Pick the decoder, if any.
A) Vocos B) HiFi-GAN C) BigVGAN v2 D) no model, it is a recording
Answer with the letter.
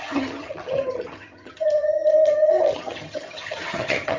B